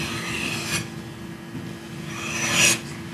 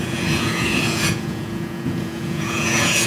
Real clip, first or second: first